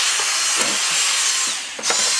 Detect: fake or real real